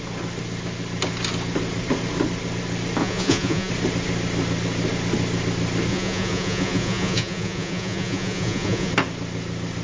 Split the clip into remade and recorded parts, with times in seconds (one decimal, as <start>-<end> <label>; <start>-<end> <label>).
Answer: 0.0-3.0 recorded; 3.0-3.7 remade; 3.7-5.9 recorded; 5.9-8.9 remade; 8.9-9.8 recorded